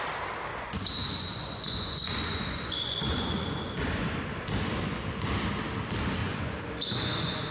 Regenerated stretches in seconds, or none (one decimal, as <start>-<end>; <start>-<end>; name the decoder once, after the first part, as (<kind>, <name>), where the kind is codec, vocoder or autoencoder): 0.5-4.2 (vocoder, Vocos); 6.2-7.5

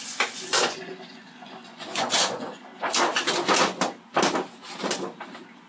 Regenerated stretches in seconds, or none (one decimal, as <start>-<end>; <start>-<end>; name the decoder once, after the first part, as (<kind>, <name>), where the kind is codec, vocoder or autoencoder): 0.0-2.7 (vocoder, Vocos)

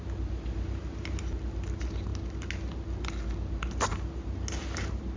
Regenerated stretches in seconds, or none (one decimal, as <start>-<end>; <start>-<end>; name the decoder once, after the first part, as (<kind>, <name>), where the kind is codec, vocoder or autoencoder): none

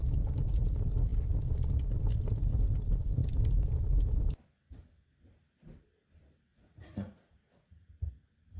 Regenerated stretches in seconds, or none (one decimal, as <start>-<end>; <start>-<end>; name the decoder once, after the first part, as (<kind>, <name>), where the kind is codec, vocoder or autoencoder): 6.5-8.1 (vocoder, Vocos)

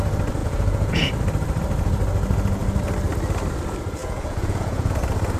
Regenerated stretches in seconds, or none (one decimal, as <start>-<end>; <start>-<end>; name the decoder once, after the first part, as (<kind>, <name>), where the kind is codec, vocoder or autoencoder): 0.4-1.1 (vocoder, Vocos); 4.0-4.9